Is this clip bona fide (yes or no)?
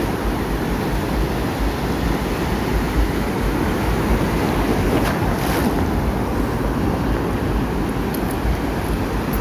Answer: yes